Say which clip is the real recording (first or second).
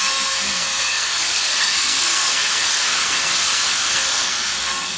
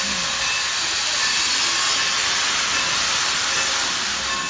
second